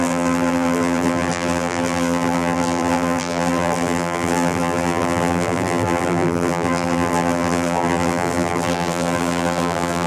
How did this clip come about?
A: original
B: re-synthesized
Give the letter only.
B